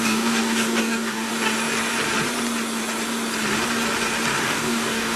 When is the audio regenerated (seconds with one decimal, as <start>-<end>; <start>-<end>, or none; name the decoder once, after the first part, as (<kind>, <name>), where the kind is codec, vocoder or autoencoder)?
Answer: 0.0-1.3 (codec, DAC); 4.4-5.2